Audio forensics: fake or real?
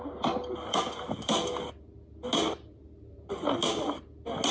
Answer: real